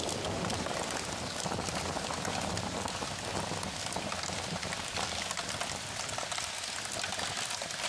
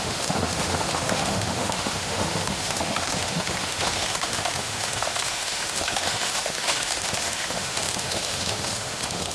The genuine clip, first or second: first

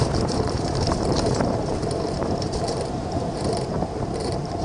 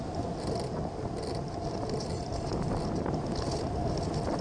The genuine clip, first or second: second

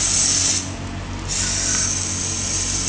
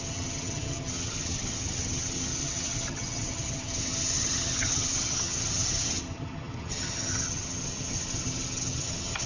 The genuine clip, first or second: first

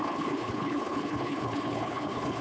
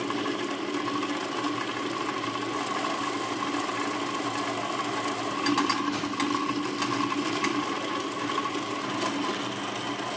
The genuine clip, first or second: second